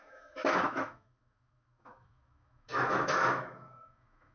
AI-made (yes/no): yes